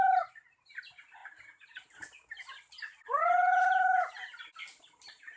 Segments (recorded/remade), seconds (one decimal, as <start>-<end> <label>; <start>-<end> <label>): 0.0-5.4 recorded